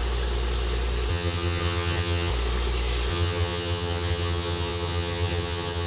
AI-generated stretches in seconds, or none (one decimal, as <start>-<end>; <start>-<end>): 1.1-2.3; 3.1-5.9

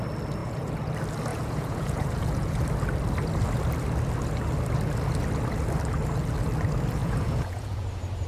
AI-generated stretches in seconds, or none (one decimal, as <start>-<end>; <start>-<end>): 0.4-0.9; 1.3-2.6; 7.0-7.9

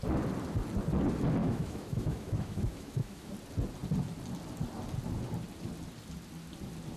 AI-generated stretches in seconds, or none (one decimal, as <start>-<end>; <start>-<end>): 1.4-3.3

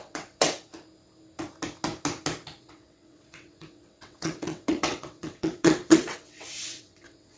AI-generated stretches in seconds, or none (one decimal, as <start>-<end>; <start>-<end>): 0.0-0.7; 2.6-7.4

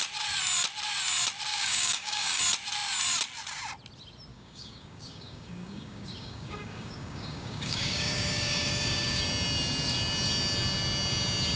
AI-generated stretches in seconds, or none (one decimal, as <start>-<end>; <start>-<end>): 1.5-2.4; 4.3-9.2